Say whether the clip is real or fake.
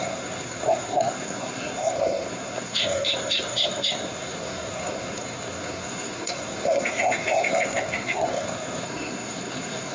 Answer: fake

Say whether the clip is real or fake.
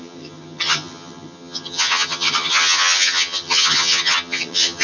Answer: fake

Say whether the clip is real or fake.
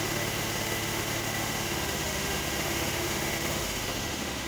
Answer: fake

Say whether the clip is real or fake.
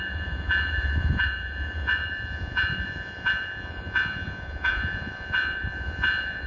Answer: fake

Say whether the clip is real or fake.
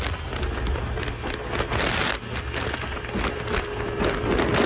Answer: real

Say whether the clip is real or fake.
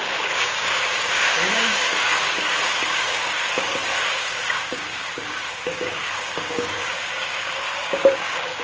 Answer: fake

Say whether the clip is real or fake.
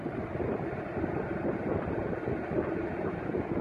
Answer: real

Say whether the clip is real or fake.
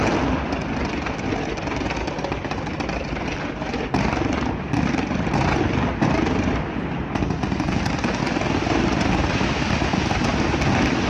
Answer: real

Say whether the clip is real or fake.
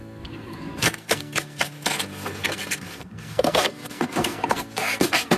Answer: fake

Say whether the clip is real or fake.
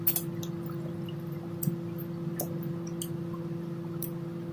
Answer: real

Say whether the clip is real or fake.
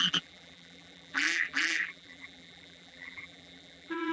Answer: fake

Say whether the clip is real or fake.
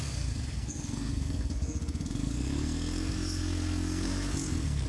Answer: fake